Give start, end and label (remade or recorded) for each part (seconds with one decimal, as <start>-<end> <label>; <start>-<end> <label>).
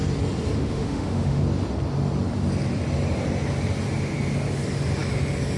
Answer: 0.0-0.6 recorded; 0.6-1.4 remade; 1.4-5.6 recorded